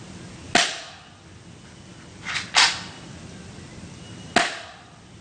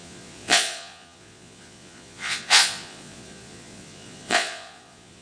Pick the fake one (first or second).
second